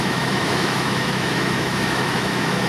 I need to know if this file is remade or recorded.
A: remade